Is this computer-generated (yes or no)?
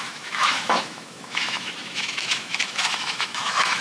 yes